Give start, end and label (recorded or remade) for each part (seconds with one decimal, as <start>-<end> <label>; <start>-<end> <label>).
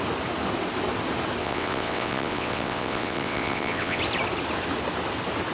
0.0-1.4 recorded; 1.4-4.0 remade; 4.0-5.5 recorded